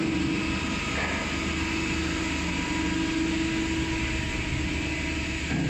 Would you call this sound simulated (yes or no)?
no